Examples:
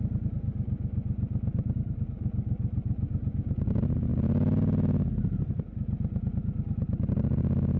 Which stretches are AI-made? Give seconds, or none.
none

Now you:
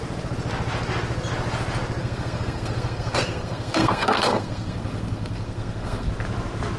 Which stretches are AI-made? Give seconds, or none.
2.0-6.1 (codec, SNAC)